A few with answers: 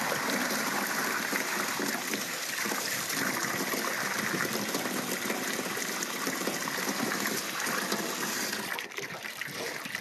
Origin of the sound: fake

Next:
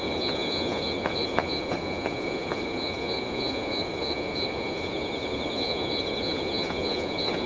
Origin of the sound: fake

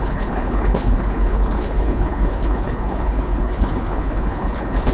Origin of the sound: fake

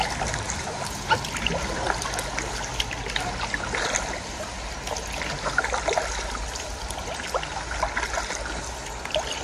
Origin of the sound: real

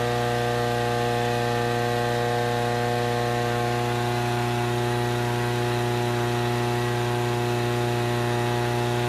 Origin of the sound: real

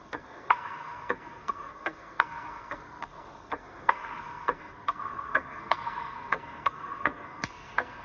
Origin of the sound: fake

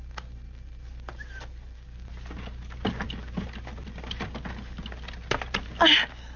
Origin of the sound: real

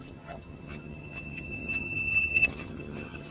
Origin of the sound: fake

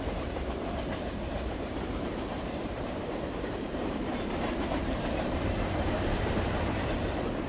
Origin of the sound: fake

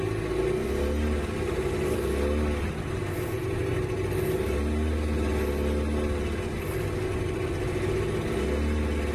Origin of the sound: real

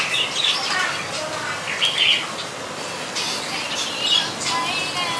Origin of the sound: real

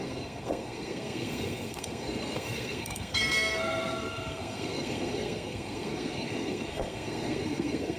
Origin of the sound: fake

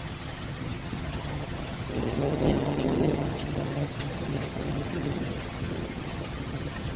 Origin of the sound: fake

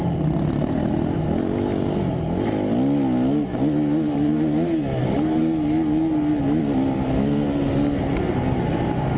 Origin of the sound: real